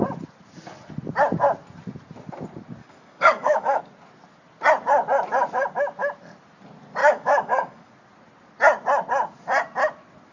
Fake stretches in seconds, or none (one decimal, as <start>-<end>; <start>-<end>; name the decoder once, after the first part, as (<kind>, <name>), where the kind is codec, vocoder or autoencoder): 2.8-3.8 (codec, DAC); 7.0-7.9